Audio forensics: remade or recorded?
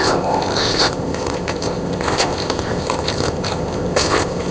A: remade